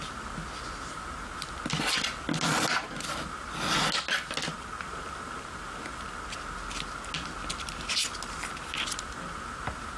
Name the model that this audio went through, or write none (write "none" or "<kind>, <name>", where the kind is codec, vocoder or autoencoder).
none